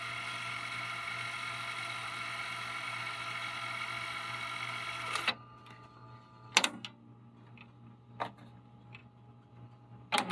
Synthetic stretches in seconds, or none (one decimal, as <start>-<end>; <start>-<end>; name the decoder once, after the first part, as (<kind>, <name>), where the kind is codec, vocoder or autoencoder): none